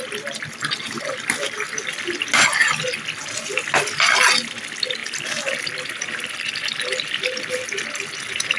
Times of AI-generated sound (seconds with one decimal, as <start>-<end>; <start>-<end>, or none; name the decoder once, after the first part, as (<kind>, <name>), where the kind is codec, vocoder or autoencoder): none